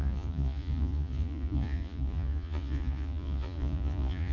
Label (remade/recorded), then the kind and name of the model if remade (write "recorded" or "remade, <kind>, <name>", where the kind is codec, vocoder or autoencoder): remade, vocoder, Vocos